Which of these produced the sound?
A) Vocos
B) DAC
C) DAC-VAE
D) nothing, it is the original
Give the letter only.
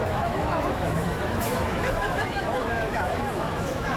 C